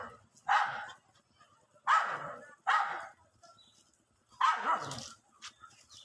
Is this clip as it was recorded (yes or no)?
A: yes